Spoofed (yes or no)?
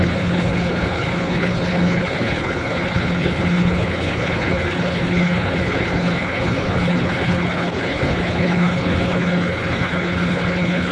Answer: yes